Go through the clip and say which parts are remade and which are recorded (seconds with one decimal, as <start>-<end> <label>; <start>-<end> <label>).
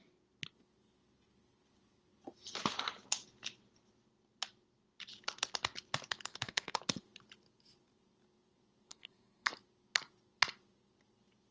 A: 0.0-6.3 recorded; 6.3-6.8 remade; 6.8-8.9 recorded; 8.9-9.5 remade; 9.5-11.5 recorded